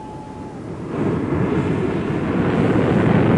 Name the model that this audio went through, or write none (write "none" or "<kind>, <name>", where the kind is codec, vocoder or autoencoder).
none